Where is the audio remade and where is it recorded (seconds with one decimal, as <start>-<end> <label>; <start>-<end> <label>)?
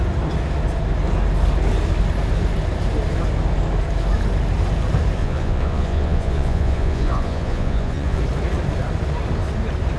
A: 0.0-5.2 recorded; 5.2-8.2 remade; 8.2-10.0 recorded